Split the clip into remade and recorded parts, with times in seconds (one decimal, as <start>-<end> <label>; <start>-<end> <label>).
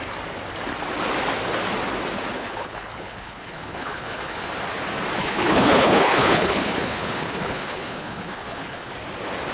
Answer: 0.0-2.3 recorded; 2.3-4.5 remade; 4.5-5.2 recorded; 5.2-8.9 remade; 8.9-9.5 recorded